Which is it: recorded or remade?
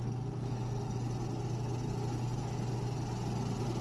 recorded